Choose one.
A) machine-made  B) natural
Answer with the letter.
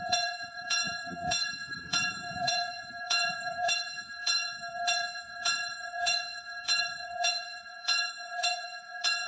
A